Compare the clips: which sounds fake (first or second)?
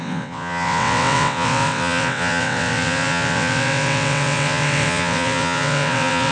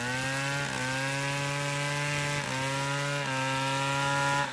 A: first